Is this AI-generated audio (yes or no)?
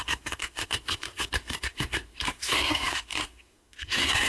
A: yes